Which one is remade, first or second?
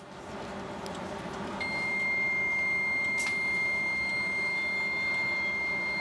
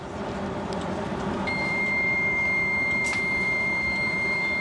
second